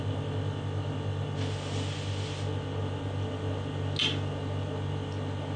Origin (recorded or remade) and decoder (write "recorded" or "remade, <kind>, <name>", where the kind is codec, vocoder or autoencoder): recorded